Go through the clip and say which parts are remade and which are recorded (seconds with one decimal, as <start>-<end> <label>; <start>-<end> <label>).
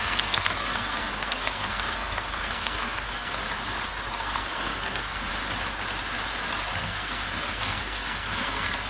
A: 0.0-3.4 remade; 3.4-4.1 recorded; 4.1-5.3 remade; 5.3-6.8 recorded; 6.8-8.9 remade